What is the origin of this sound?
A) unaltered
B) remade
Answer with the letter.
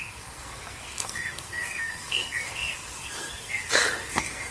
B